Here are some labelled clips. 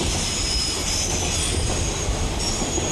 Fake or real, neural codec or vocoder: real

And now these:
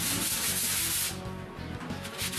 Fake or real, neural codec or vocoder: real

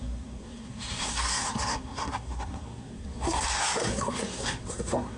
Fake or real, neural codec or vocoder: fake, codec, SNAC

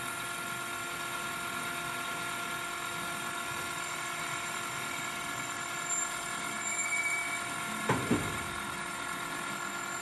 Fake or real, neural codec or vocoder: real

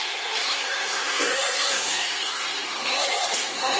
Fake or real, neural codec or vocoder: fake, codec, SNAC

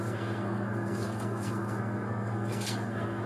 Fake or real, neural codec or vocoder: fake, codec, SNAC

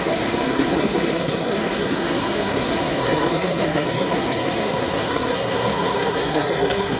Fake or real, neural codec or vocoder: fake, codec, SNAC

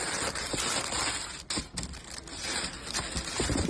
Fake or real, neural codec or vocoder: real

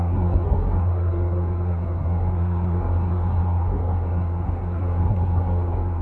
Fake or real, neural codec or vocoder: fake, codec, SNAC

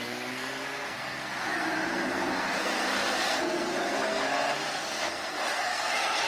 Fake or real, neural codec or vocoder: fake, codec, SNAC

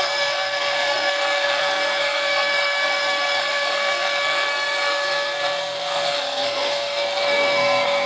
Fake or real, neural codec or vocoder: fake, codec, SNAC